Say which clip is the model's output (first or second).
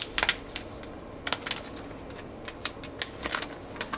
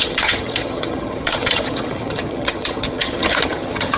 second